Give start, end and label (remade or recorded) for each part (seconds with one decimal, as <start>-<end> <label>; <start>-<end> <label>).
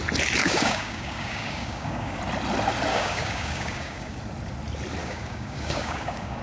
0.0-0.4 recorded; 0.4-2.2 remade; 2.2-2.9 recorded; 2.9-4.2 remade; 4.2-5.0 recorded; 5.0-6.4 remade